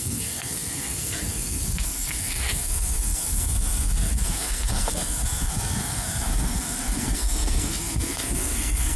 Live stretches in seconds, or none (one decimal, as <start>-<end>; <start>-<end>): none